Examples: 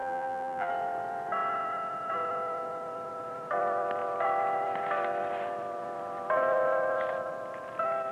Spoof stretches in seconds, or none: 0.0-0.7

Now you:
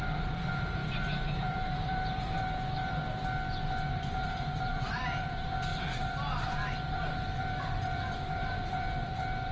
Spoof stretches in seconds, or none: 0.0-3.0; 3.8-9.5

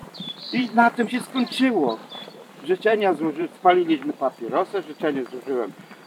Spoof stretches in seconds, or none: 0.0-1.1; 2.0-4.1

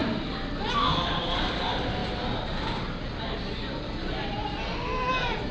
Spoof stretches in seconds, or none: none

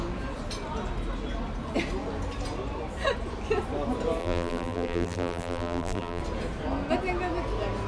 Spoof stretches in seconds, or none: 4.2-6.2

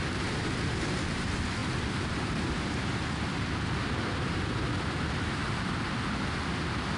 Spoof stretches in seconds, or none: 1.6-5.8